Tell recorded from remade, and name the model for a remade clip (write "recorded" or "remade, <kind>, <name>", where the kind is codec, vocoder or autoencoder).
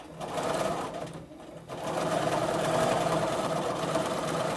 recorded